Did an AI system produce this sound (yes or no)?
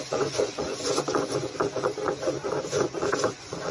yes